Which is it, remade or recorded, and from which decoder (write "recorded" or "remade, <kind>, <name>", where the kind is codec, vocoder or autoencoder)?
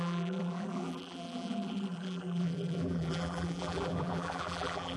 remade, vocoder, BigVGAN v2